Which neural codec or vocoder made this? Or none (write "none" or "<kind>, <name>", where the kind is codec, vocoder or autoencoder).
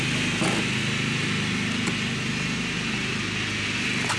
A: none